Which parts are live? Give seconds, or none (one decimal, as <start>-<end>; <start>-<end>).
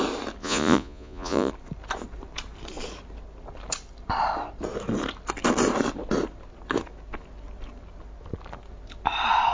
0.0-0.4; 1.5-9.5